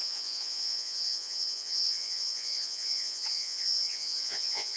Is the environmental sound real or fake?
fake